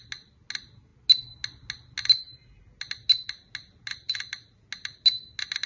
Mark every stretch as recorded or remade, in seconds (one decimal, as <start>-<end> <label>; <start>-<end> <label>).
0.0-5.7 recorded